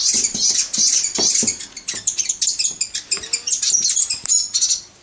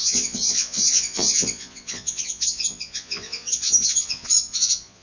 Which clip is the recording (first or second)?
first